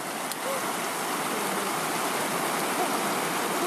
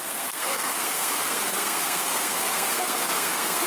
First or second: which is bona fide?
first